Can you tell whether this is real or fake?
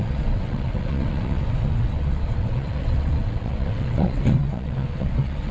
fake